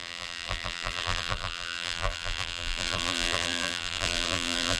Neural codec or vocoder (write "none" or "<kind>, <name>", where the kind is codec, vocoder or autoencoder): vocoder, BigVGAN v2